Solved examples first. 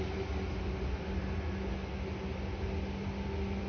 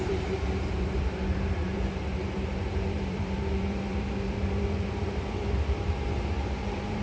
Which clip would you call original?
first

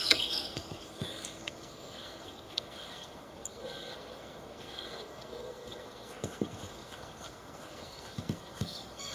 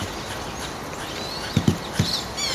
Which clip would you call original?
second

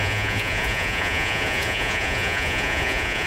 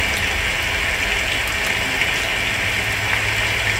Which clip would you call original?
second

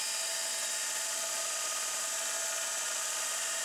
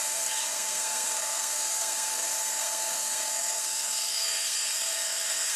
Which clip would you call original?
first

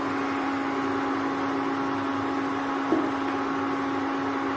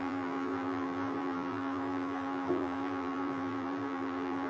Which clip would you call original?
first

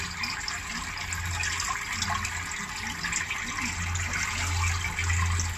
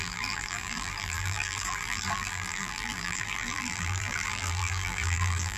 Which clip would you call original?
first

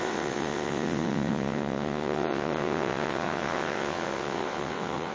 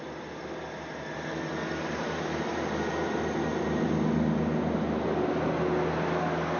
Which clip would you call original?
second